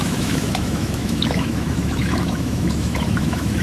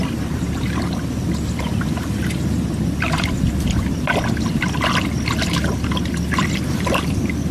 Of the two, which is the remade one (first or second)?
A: first